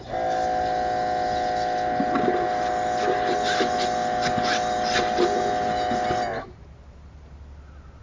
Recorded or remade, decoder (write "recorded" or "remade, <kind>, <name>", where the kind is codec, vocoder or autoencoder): recorded